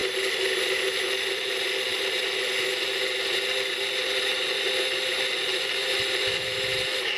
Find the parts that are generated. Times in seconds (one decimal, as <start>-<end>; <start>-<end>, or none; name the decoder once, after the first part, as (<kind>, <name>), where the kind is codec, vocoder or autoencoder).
none